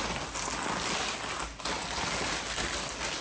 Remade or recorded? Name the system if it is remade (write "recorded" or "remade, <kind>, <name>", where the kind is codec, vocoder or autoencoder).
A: recorded